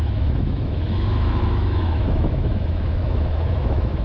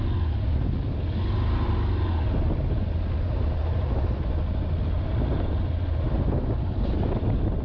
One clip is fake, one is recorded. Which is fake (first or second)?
first